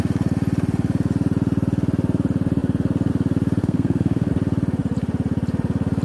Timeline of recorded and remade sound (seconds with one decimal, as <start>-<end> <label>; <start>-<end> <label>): 0.0-3.6 recorded; 3.6-4.3 remade; 4.3-6.0 recorded